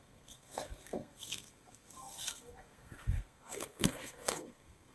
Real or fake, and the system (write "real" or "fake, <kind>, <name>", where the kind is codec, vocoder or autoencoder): fake, codec, SNAC